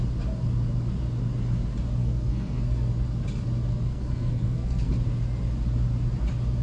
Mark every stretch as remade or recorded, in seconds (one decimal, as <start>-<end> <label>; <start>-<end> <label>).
0.0-2.0 recorded; 2.0-2.9 remade; 2.9-3.7 recorded; 3.7-4.9 remade; 4.9-6.6 recorded